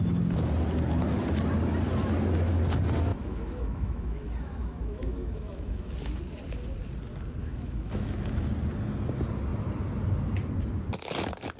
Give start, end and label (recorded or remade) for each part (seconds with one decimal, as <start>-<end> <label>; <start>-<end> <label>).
0.0-3.1 recorded; 3.1-5.9 remade; 5.9-7.4 recorded; 7.4-8.5 remade; 8.5-11.6 recorded